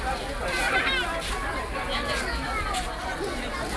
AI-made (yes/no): no